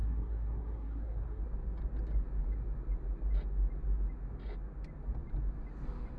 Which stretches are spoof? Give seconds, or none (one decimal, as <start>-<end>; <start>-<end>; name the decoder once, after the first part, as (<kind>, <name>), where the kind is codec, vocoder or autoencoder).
0.0-1.4 (codec, SNAC)